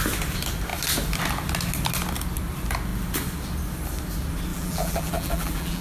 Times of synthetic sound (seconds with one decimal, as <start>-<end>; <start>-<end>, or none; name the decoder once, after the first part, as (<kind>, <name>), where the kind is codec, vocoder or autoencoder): 4.5-5.8 (vocoder, BigVGAN v2)